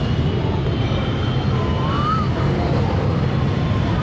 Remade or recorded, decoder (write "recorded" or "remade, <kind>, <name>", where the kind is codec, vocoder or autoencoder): recorded